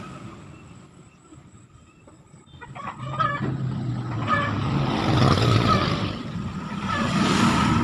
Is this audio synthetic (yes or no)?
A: no